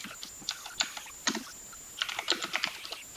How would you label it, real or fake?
real